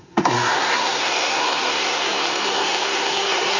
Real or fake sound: fake